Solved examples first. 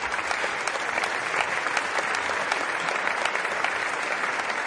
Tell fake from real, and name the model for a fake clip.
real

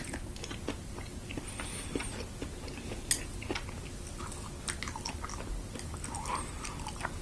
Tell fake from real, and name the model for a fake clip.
real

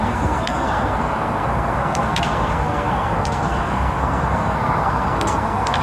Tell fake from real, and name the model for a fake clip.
fake, codec, SNAC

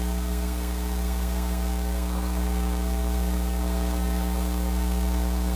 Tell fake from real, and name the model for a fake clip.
fake, codec, SNAC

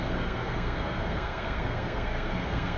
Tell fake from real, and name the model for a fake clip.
fake, codec, SNAC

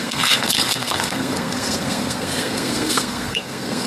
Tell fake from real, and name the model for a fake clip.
fake, codec, SNAC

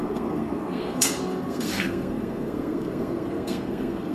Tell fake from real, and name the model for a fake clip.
fake, codec, SNAC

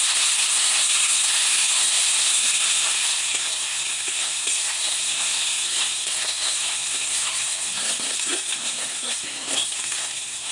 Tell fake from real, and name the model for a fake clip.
fake, codec, SNAC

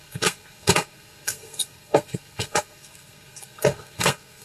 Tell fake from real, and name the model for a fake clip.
fake, codec, SNAC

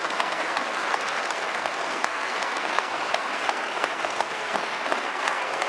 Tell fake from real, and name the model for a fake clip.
fake, codec, SNAC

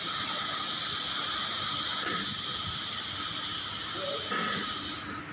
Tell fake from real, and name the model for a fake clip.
real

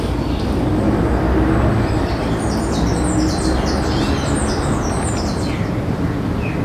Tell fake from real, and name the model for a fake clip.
real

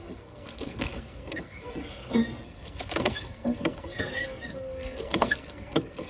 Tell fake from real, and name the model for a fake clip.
fake, codec, SNAC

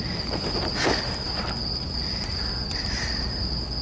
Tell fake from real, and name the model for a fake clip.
real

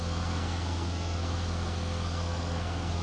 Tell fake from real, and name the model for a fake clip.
fake, codec, SNAC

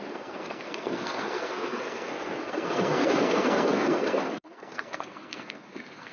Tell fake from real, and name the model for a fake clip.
fake, codec, SNAC